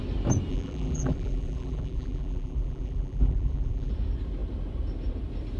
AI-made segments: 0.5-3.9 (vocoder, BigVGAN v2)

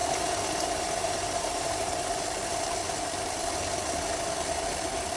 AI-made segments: 0.0-2.2 (vocoder, BigVGAN v2)

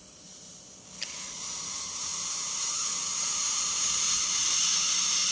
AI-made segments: none